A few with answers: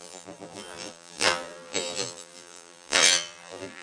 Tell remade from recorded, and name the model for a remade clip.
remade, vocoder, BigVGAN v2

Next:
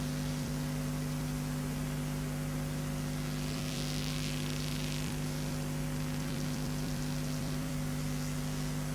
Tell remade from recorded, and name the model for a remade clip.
remade, vocoder, BigVGAN v2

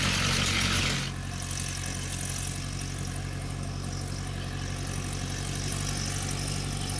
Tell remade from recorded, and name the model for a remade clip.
recorded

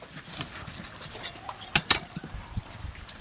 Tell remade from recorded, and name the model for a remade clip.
recorded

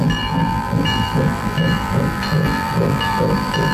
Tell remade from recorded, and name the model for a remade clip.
remade, vocoder, BigVGAN v2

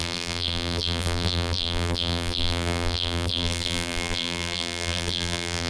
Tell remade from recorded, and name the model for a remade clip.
remade, vocoder, BigVGAN v2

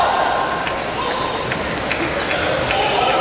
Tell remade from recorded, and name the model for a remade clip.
recorded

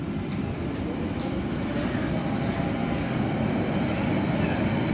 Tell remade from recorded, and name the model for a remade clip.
recorded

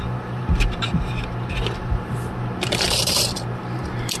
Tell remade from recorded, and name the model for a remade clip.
remade, vocoder, BigVGAN v2